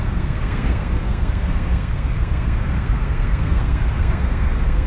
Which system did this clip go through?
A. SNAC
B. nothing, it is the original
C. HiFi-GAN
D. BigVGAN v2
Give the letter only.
A